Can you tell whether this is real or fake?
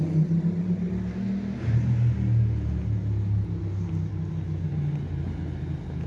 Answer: real